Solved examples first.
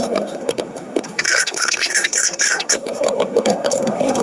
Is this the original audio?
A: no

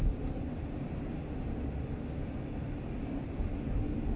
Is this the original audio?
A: yes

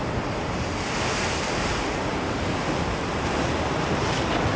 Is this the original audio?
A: yes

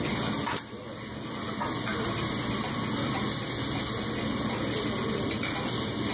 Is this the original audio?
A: yes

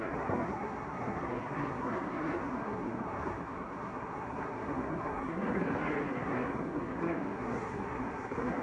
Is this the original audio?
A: no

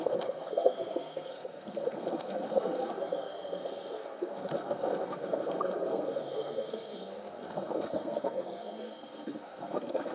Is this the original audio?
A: no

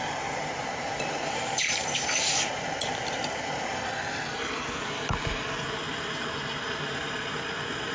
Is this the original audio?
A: no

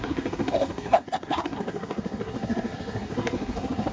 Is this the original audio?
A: no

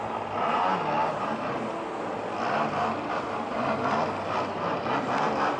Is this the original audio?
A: yes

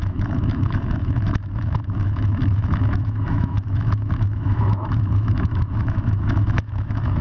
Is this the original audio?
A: no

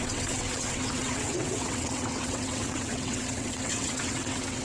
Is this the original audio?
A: no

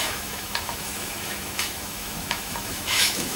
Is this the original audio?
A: no